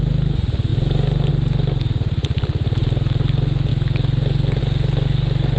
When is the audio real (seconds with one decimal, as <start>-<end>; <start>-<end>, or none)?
0.0-5.6